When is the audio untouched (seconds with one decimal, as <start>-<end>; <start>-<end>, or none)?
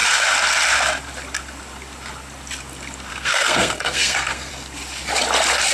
0.0-3.1; 4.5-5.7